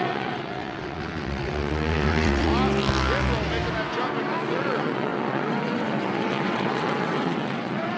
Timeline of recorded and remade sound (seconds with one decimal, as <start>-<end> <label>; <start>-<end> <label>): 0.0-2.5 remade; 2.5-4.5 recorded; 4.5-8.0 remade

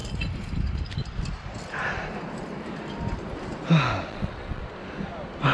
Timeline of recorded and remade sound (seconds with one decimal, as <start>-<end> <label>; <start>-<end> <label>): 0.0-4.1 recorded; 4.1-4.6 remade; 4.6-5.5 recorded